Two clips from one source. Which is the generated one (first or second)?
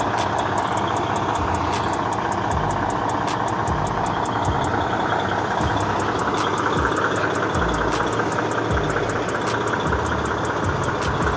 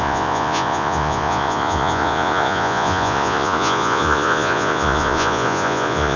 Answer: second